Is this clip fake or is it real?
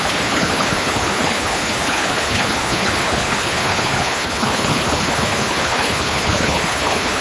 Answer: fake